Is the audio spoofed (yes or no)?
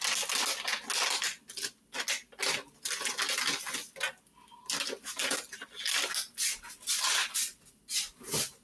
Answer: no